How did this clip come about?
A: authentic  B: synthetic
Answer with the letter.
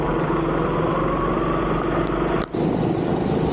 A